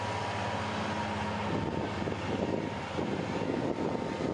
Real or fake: real